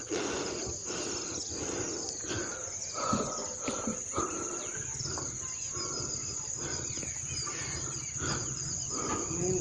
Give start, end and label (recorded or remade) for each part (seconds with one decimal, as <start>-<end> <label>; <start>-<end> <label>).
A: 0.0-0.8 remade; 0.8-2.3 recorded; 2.3-3.4 remade; 3.4-8.3 recorded; 8.3-9.6 remade